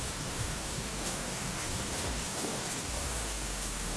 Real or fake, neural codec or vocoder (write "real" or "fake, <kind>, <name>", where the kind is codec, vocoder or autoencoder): fake, codec, DAC